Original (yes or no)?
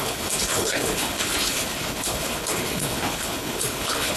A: no